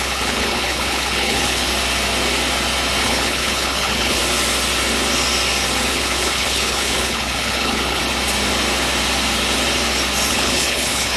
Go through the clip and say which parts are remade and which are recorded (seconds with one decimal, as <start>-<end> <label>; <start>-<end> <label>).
0.0-1.7 remade; 1.7-3.0 recorded; 3.0-4.2 remade; 4.2-5.9 recorded; 5.9-8.0 remade; 8.0-10.3 recorded; 10.3-11.2 remade